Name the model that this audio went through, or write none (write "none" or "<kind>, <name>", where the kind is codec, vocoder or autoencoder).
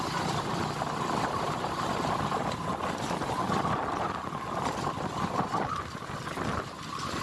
none